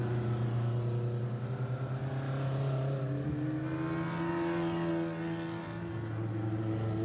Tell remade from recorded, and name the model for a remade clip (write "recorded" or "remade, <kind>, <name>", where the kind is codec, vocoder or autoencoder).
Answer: recorded